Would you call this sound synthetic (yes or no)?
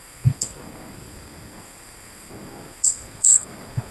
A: yes